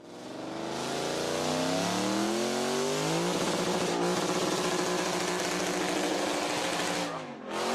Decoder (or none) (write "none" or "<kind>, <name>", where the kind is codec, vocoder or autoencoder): none